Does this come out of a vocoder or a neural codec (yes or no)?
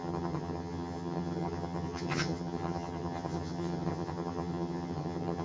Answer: yes